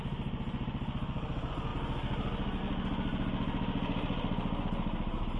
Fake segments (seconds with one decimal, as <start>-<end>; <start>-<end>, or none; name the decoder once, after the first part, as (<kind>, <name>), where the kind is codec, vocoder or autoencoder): none